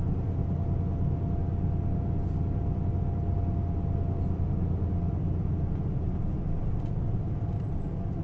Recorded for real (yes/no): yes